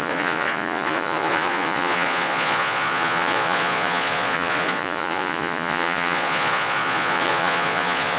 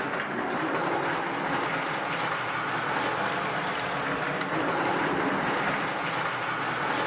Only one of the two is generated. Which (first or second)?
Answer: first